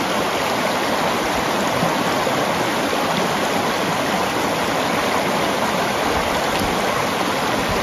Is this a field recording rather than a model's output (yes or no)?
yes